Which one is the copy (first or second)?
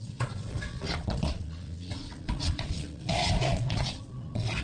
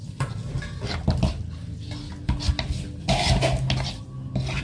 first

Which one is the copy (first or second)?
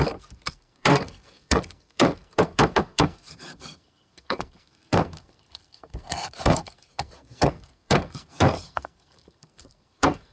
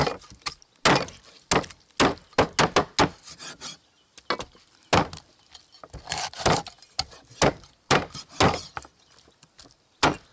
first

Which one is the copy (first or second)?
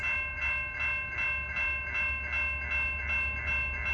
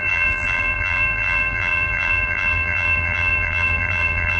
second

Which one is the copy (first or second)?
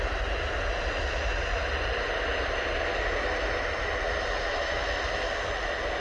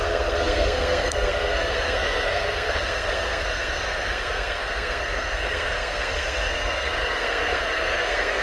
second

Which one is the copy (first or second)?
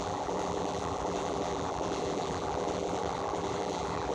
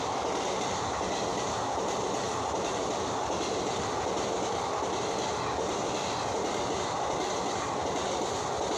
first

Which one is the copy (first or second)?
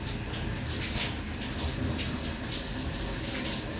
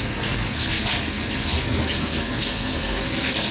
second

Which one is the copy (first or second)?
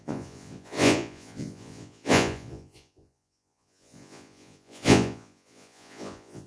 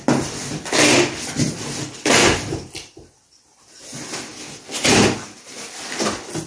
first